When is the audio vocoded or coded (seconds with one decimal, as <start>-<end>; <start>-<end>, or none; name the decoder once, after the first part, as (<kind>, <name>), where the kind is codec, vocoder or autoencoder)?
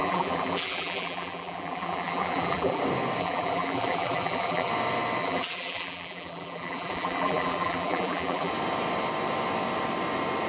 0.0-2.8 (vocoder, BigVGAN v2); 3.2-4.7; 5.2-8.5